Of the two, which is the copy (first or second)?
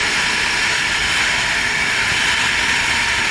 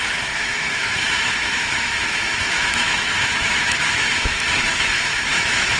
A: second